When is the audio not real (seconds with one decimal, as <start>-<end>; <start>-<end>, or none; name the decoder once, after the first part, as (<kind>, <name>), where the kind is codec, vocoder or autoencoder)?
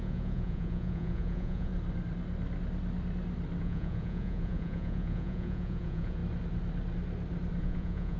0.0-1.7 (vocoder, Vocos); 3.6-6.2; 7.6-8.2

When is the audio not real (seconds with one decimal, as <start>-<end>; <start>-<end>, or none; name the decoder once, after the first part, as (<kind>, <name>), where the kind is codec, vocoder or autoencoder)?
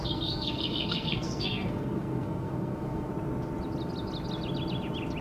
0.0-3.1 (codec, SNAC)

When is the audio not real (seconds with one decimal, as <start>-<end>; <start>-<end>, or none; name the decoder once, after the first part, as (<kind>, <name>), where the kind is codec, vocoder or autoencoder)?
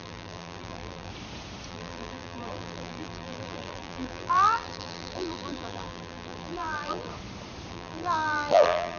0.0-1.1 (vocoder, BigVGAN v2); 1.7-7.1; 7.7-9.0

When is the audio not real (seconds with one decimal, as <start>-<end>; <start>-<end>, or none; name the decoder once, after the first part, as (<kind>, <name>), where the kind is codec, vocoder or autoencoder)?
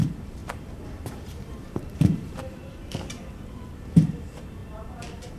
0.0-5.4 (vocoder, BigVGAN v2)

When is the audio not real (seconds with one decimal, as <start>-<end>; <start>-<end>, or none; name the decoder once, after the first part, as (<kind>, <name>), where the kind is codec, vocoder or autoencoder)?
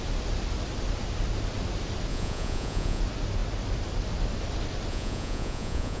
2.1-3.0 (vocoder, Vocos); 4.9-6.0